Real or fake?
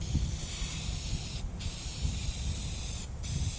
real